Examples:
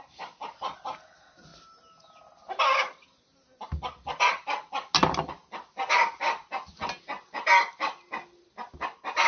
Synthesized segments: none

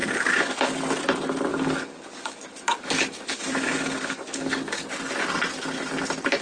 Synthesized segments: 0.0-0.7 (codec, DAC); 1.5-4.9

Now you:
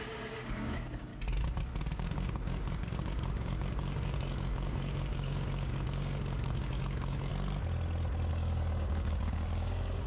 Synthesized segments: 0.0-1.1 (codec, DAC); 1.8-7.3; 8.3-10.1